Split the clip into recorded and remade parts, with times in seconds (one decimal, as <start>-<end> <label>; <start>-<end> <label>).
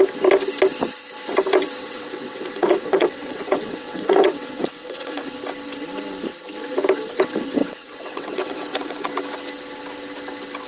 0.0-1.8 recorded; 1.8-5.3 remade; 5.3-7.6 recorded; 7.6-9.1 remade; 9.1-10.7 recorded